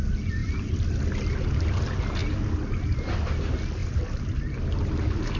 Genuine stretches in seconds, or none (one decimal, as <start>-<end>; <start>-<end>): 0.0-0.4; 1.6-5.4